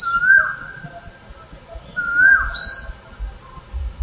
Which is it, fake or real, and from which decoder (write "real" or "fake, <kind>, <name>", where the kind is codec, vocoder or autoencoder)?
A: real